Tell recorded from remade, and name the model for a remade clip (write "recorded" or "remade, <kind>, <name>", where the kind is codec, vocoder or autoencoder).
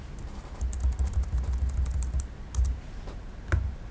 recorded